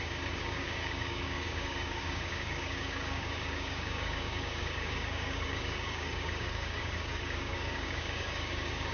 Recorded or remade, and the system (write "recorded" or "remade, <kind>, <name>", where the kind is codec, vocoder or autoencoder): remade, codec, DAC